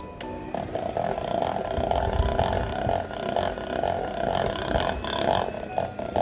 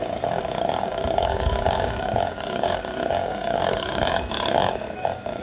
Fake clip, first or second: second